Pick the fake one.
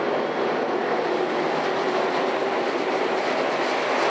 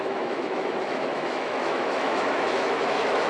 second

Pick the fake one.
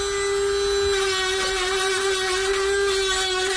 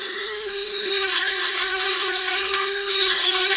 second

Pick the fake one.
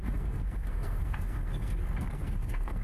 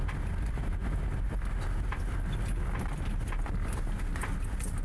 first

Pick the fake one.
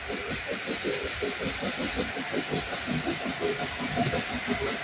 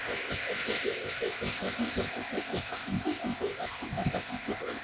second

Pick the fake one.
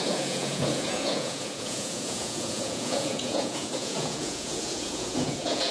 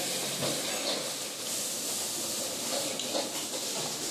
first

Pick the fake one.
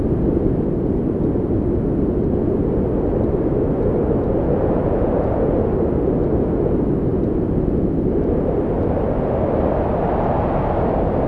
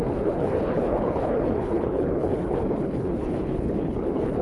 second